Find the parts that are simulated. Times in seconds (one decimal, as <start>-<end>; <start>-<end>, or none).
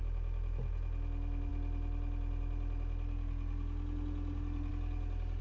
none